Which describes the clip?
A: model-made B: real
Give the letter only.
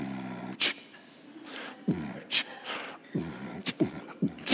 B